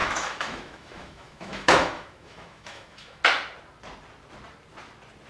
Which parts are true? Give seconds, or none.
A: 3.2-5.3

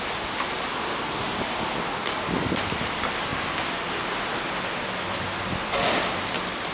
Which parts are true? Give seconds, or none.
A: 0.0-6.7